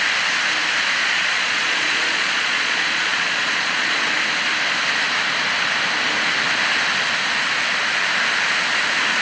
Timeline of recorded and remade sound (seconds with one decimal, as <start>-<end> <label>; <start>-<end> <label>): 0.0-1.0 recorded; 1.0-4.1 remade; 4.1-9.2 recorded